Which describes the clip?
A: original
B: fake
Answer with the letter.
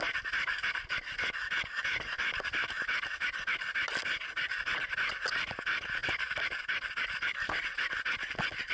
A